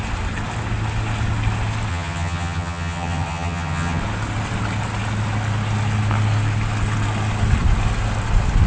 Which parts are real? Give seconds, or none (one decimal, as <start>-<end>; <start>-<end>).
0.0-1.9; 4.0-8.7